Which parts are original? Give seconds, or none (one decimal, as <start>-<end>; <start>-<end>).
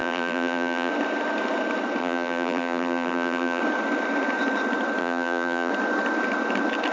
0.9-2.0; 3.6-5.0; 5.7-6.9